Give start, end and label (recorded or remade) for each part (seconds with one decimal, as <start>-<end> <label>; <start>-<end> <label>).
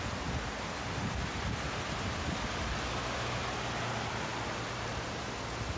0.0-5.8 recorded